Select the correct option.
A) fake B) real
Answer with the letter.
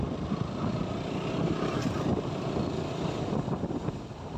A